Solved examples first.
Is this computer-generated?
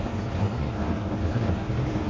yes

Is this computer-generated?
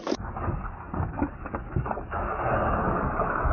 yes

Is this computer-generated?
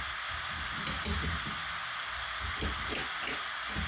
no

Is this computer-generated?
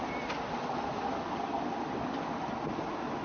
no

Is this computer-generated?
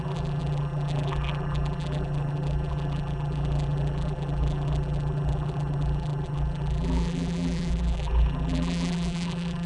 yes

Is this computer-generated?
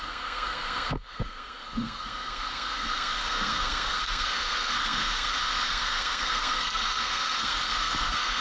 yes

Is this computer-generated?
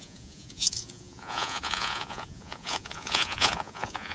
yes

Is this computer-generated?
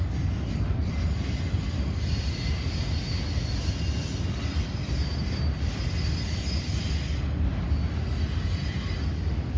no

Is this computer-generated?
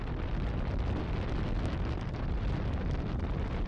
no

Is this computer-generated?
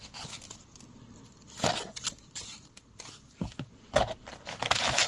no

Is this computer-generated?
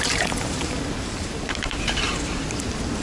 yes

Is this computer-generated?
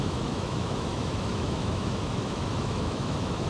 yes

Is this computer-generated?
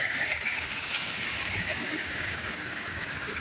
yes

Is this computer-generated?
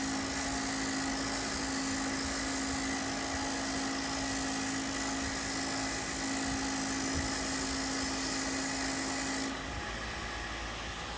no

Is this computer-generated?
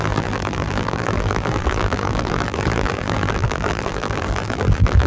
yes